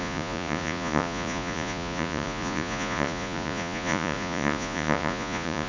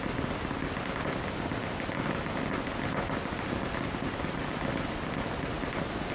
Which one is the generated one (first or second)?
first